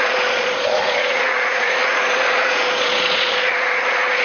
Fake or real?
fake